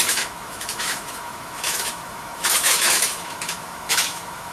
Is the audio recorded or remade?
remade